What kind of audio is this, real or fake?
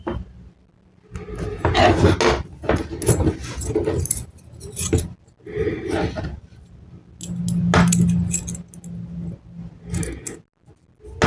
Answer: real